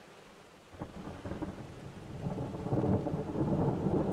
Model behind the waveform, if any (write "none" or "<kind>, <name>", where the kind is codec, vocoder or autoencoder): none